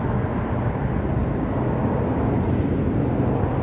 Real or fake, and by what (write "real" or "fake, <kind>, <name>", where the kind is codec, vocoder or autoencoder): real